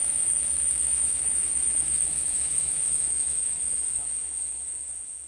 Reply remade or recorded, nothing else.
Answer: remade